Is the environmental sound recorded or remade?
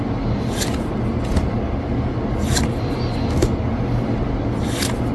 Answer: recorded